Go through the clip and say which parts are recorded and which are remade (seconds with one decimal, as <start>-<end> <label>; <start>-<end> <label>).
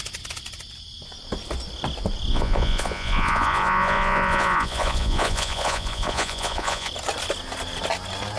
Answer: 0.0-2.3 recorded; 2.3-6.9 remade; 6.9-8.4 recorded